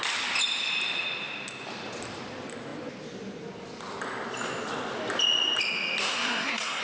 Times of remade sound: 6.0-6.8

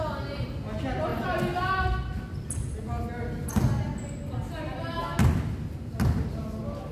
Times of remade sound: none

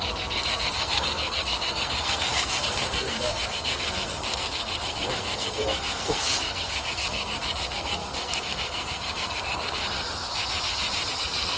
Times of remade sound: 0.0-9.8; 11.1-11.6

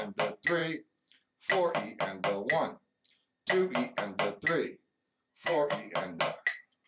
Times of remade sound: 5.3-5.9